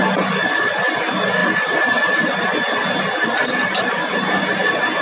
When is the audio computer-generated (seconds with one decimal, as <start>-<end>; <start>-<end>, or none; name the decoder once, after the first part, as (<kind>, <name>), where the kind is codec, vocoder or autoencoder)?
none